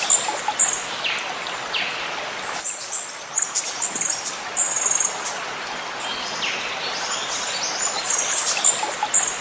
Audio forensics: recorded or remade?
recorded